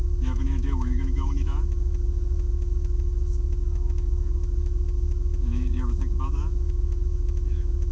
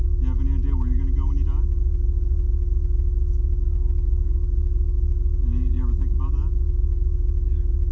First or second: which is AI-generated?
first